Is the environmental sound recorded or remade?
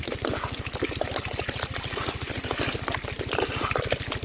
recorded